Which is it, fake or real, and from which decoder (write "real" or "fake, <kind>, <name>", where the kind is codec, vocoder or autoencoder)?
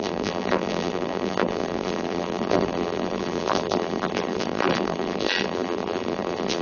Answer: fake, vocoder, BigVGAN v2